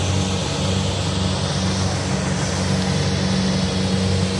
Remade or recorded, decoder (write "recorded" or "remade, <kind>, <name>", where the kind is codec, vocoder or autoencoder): recorded